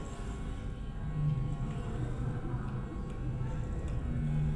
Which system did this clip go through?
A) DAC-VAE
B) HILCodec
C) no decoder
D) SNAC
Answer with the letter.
C